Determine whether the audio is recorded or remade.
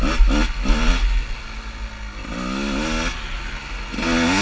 recorded